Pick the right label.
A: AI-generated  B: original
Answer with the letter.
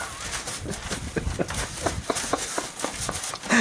B